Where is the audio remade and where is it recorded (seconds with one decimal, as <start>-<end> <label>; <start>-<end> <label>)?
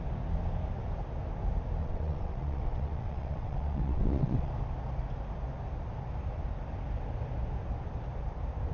0.0-1.8 recorded; 1.8-4.5 remade; 4.5-8.7 recorded